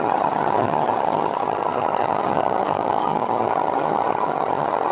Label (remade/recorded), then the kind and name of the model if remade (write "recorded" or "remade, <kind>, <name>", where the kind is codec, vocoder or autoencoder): remade, vocoder, HiFi-GAN